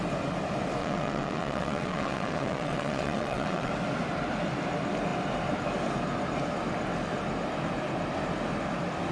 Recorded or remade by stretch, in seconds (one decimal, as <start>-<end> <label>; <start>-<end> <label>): 0.0-0.8 recorded; 0.8-3.7 remade; 3.7-9.1 recorded